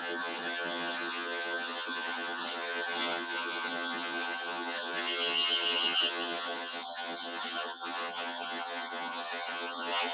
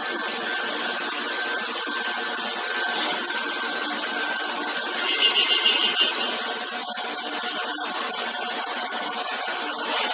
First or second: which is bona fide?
second